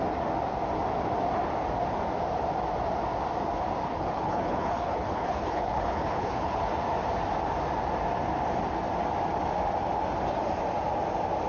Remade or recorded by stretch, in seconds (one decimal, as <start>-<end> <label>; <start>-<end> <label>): 0.0-3.8 recorded; 3.8-6.7 remade; 6.7-11.5 recorded

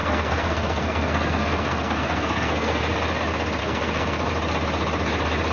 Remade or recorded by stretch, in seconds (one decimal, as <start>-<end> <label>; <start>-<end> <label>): 0.0-2.8 remade; 2.8-3.6 recorded; 3.6-4.3 remade; 4.3-5.5 recorded